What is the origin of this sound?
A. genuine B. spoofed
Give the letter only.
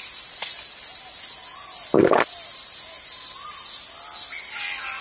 A